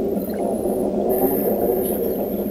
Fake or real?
real